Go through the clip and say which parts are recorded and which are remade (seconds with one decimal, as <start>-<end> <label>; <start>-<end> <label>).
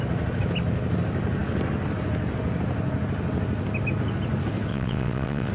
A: 0.0-4.7 recorded; 4.7-5.5 remade